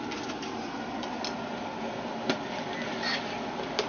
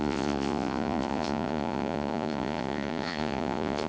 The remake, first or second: second